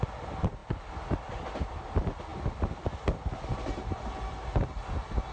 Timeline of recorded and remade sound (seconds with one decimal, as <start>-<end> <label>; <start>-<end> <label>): 0.0-5.3 recorded